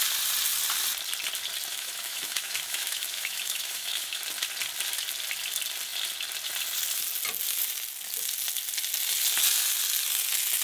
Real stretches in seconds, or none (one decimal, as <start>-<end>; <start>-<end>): 0.0-1.7; 4.2-10.6